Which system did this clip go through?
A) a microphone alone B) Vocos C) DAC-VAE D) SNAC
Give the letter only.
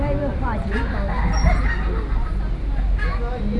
A